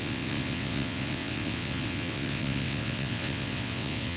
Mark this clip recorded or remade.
remade